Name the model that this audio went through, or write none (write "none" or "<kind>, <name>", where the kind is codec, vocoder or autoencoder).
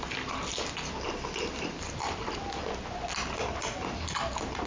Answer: none